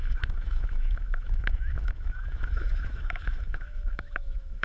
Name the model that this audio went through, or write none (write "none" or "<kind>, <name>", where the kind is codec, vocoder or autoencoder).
autoencoder, DAC-VAE